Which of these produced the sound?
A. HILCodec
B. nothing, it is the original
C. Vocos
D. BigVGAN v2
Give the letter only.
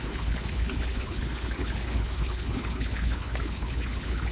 A